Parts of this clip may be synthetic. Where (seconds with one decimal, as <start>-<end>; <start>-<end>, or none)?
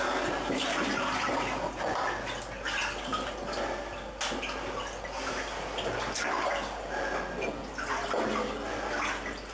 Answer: none